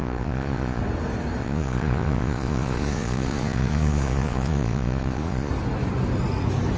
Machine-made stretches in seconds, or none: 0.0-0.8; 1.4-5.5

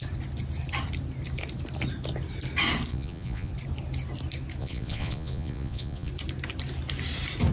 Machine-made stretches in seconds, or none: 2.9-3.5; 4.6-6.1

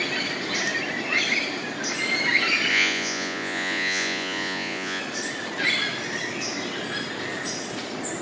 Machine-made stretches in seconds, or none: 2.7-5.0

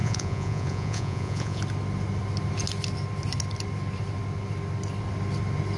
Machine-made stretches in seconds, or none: 0.0-1.6